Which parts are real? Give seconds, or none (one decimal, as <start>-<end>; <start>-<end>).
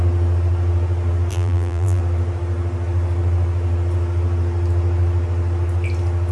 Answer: 0.0-1.3; 2.0-6.3